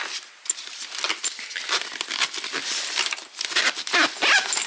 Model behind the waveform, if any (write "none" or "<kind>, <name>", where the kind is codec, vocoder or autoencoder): none